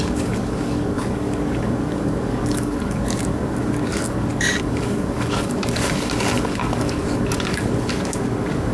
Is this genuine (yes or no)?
no